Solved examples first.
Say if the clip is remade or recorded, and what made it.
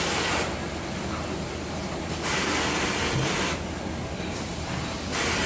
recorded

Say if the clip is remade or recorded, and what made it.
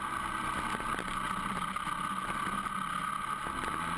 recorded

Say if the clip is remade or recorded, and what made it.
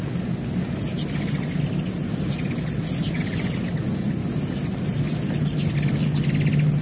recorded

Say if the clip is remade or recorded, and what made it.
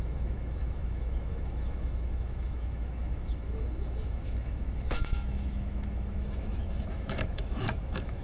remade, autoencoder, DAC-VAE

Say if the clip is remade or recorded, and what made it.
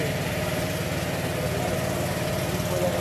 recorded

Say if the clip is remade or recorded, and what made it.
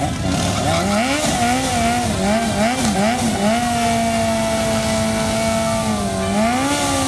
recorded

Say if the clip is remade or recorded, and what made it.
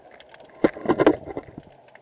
recorded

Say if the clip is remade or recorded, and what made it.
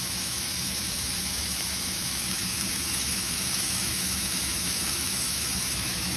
remade, autoencoder, DAC-VAE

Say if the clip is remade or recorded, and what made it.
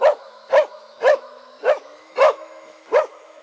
remade, autoencoder, DAC-VAE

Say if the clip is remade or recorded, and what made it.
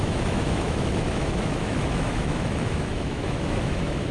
remade, autoencoder, DAC-VAE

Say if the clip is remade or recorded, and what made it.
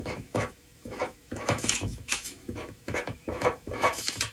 remade, autoencoder, DAC-VAE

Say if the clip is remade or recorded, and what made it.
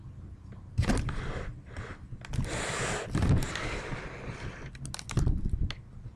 recorded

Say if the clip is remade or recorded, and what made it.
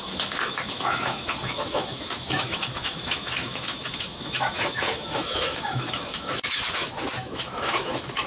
remade, autoencoder, DAC-VAE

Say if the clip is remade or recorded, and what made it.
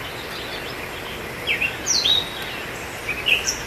recorded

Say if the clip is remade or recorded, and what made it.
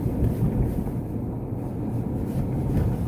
recorded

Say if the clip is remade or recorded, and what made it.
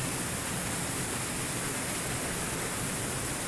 recorded